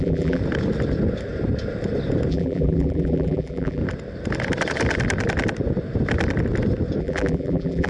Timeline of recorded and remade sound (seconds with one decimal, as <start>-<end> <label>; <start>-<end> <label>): 0.0-0.4 remade; 0.4-2.3 recorded; 2.3-3.8 remade; 3.8-7.0 recorded; 7.0-7.9 remade